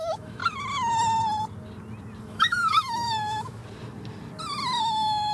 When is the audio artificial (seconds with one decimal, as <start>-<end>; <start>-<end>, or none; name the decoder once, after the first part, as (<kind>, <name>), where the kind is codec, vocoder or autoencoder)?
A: 0.0-0.4 (autoencoder, DAC-VAE); 2.2-3.6; 4.8-5.3